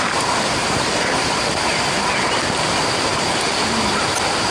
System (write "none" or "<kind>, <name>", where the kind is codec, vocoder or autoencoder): none